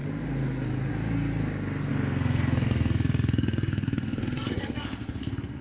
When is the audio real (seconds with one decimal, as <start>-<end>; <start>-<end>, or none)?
0.0-1.9